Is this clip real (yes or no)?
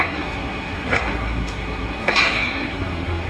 no